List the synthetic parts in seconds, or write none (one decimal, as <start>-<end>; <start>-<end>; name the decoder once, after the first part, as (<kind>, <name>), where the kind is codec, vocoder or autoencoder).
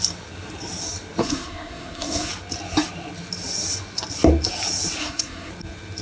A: 1.2-2.3 (codec, SNAC); 5.0-5.5